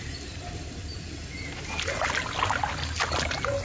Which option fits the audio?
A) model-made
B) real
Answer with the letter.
B